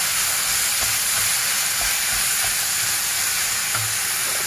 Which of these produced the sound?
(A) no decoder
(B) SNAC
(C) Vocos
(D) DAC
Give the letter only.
A